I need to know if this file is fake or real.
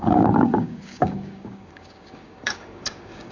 fake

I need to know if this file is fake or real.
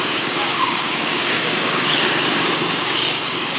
fake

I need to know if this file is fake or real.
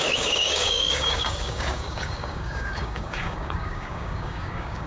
fake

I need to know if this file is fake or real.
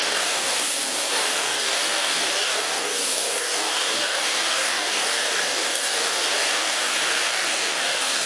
fake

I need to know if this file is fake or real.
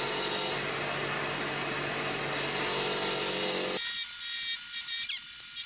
real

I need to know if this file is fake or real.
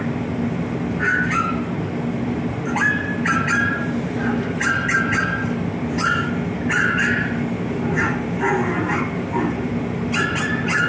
real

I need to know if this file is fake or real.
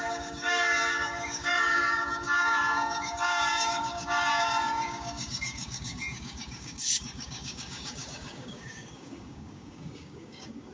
fake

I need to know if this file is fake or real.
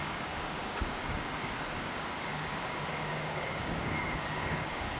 fake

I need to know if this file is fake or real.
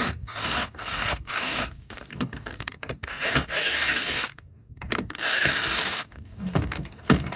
fake